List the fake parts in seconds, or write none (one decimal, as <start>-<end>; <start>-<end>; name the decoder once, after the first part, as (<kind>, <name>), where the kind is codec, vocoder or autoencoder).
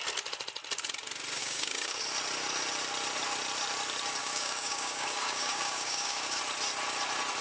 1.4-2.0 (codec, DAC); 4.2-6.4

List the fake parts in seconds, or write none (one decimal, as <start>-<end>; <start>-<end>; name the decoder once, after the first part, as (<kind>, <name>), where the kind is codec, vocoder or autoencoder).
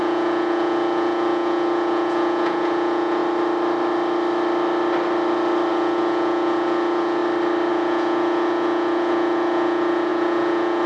0.0-3.2 (vocoder, Vocos); 5.7-7.2; 7.7-10.9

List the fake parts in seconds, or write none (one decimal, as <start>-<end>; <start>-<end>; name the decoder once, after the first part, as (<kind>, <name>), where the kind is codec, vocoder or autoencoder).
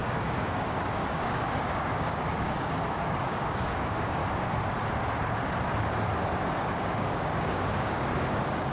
0.0-4.2 (codec, DAC); 6.7-8.7